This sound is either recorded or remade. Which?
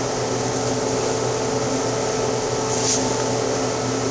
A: recorded